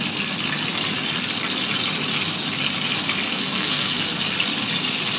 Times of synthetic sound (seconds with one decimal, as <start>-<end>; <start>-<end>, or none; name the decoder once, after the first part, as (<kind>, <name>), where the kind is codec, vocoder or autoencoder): 3.3-4.2 (codec, SNAC)